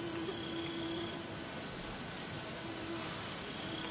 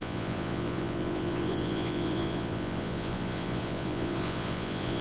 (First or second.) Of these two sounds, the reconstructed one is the second